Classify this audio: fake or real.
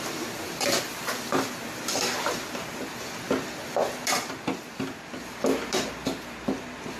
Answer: real